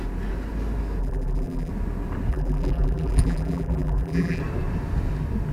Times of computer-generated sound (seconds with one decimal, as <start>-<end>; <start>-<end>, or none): 1.0-1.7; 2.3-4.4